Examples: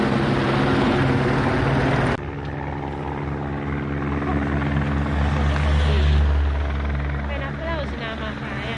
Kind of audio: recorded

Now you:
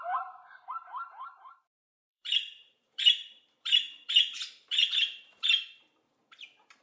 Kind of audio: remade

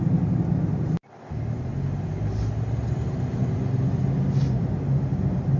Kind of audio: recorded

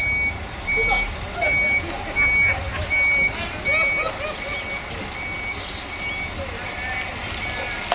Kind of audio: recorded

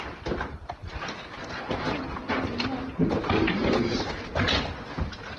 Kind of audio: recorded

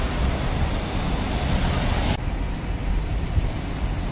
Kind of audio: recorded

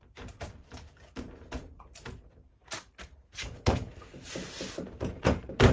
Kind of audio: remade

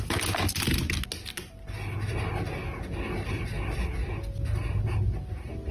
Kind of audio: recorded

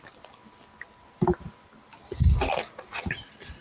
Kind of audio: recorded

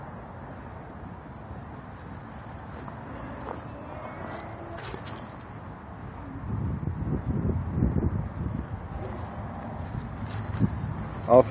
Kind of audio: recorded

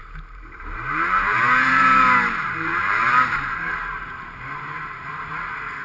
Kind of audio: remade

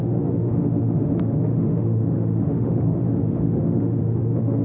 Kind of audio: remade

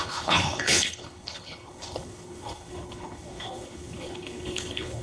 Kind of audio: remade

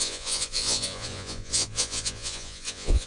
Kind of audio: remade